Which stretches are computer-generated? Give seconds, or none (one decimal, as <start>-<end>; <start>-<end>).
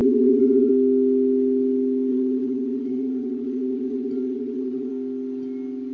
0.0-0.7; 2.1-4.9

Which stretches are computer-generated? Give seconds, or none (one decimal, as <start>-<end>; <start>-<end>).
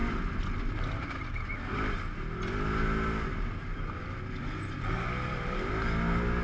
none